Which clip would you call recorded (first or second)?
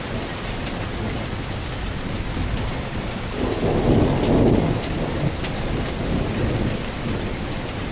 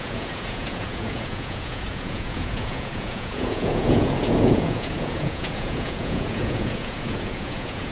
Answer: first